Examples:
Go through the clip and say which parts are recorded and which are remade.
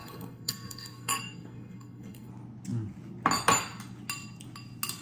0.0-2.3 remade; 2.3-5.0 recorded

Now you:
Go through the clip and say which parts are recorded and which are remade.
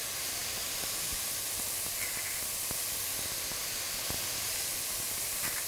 0.0-3.6 recorded; 3.6-4.2 remade; 4.2-5.7 recorded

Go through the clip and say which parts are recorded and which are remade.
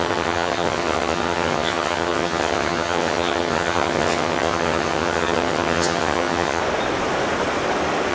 0.0-6.6 remade; 6.6-8.1 recorded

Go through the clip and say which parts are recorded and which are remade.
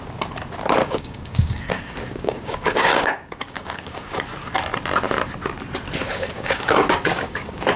0.0-0.8 recorded; 0.8-4.2 remade; 4.2-6.1 recorded; 6.1-7.8 remade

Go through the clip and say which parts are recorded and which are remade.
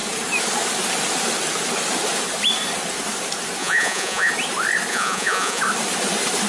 0.0-3.6 recorded; 3.6-4.3 remade; 4.3-4.9 recorded; 4.9-5.6 remade; 5.6-6.5 recorded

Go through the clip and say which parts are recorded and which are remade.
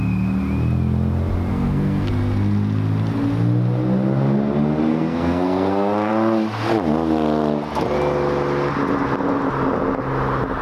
0.0-1.5 recorded; 1.5-2.1 remade; 2.1-4.9 recorded; 4.9-6.1 remade; 6.1-10.6 recorded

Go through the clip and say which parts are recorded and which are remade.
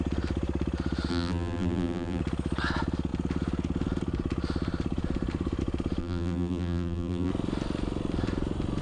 0.0-1.1 recorded; 1.1-2.2 remade; 2.2-6.0 recorded; 6.0-7.3 remade; 7.3-8.8 recorded